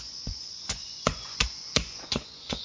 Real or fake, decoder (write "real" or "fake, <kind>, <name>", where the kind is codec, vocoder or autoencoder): fake, vocoder, Vocos